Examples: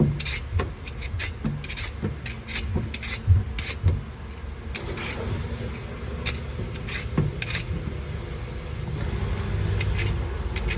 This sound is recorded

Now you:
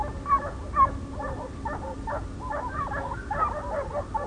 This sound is recorded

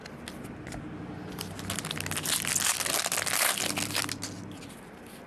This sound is recorded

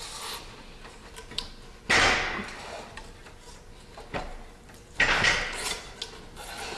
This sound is recorded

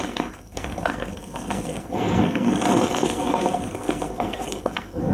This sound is remade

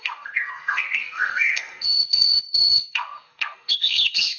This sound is remade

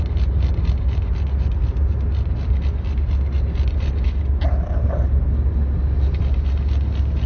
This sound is recorded